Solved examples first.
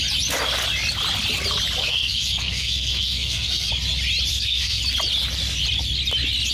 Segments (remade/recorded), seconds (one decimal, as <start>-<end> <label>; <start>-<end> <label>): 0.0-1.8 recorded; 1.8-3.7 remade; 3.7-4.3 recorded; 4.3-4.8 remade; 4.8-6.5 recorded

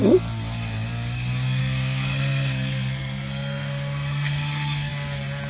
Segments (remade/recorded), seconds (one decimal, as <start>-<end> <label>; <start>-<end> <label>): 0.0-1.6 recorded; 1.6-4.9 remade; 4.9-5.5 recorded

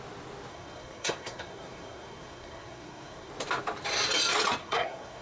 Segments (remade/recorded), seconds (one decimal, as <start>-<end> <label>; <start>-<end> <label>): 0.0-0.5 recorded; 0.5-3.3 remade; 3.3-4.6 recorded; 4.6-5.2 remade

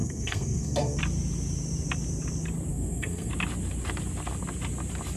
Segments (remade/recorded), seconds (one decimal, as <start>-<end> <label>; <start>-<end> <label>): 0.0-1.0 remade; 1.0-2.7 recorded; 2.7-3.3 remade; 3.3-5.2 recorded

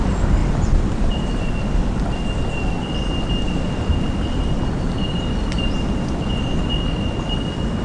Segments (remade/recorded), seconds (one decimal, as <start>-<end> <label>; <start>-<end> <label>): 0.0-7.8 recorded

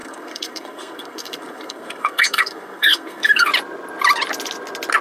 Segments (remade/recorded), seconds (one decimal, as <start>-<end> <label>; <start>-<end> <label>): 0.0-3.5 remade; 3.5-5.0 recorded

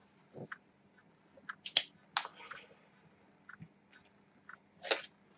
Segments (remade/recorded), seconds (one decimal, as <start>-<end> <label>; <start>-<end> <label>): 0.0-5.4 recorded